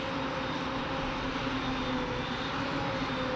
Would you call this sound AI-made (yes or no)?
no